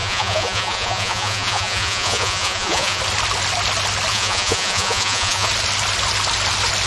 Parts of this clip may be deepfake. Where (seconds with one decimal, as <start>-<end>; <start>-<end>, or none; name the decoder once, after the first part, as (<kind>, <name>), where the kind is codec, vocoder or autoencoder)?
0.0-3.0 (vocoder, Vocos); 4.1-5.5